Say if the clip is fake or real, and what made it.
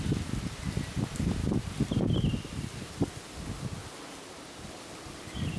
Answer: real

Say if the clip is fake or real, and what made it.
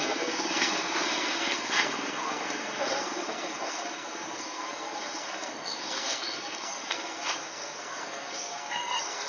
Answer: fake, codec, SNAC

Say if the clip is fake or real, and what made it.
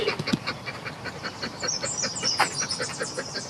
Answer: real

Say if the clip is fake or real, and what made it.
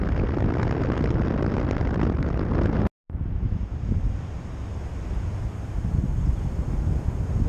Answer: real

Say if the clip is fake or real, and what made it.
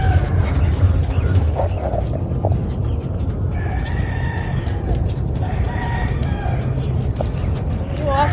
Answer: real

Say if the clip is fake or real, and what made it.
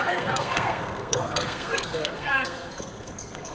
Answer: fake, codec, SNAC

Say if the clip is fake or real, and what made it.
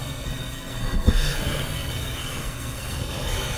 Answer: fake, codec, SNAC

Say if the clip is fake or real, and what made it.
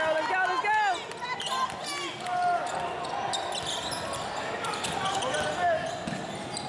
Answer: real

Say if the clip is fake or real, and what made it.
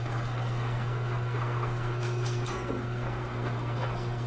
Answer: fake, codec, SNAC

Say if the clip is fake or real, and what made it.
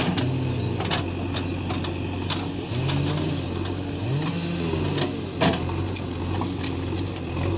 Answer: real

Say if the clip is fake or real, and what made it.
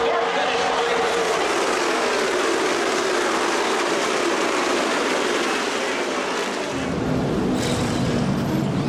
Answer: real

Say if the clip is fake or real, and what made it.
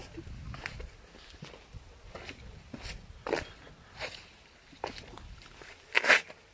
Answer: real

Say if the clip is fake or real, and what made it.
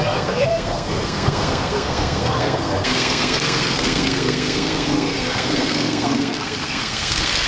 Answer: fake, codec, SNAC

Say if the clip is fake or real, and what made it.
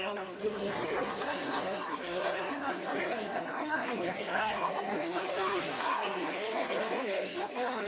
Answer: fake, codec, SNAC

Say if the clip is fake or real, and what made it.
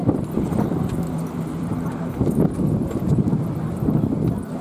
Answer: real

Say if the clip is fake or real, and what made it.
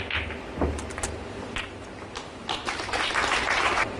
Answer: real